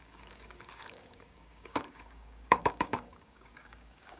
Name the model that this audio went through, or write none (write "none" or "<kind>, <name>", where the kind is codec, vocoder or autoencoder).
codec, DAC